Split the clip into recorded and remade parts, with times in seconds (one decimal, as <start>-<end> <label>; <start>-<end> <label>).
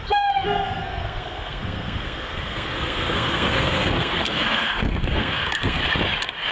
0.0-5.8 remade; 5.8-6.5 recorded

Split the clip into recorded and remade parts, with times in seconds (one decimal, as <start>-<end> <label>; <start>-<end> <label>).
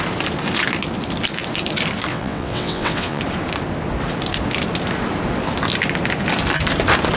0.0-2.1 recorded; 2.1-3.2 remade; 3.2-7.2 recorded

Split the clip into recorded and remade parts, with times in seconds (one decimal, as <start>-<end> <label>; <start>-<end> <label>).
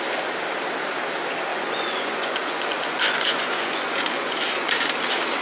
0.0-1.5 recorded; 1.5-4.7 remade; 4.7-5.4 recorded